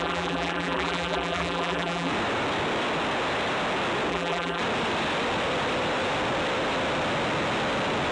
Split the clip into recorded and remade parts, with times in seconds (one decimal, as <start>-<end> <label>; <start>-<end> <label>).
0.0-2.1 remade; 2.1-4.1 recorded; 4.1-4.6 remade; 4.6-8.1 recorded